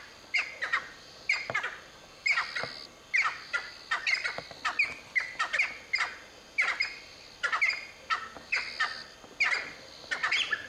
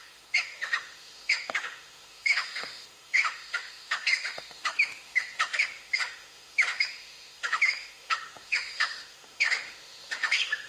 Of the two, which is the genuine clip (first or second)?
first